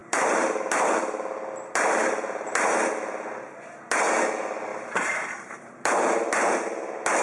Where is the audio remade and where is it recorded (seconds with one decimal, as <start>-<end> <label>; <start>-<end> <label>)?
0.0-0.6 remade; 0.6-2.0 recorded; 2.0-2.9 remade; 2.9-4.7 recorded; 4.7-5.9 remade; 5.9-7.2 recorded